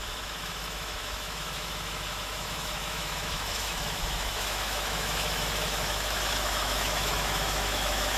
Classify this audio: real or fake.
fake